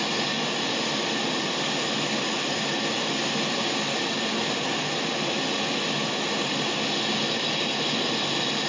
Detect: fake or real real